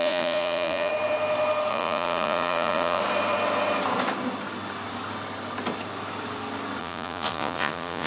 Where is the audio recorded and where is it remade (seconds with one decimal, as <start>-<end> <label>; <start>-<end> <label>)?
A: 0.0-0.9 remade; 0.9-1.7 recorded; 1.7-3.0 remade; 3.0-6.8 recorded; 6.8-8.1 remade